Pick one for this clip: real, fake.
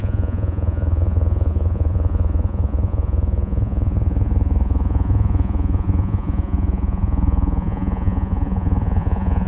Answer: fake